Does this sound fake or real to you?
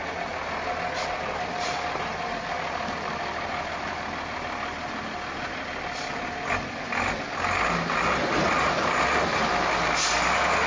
real